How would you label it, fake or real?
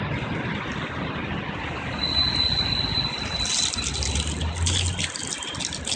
real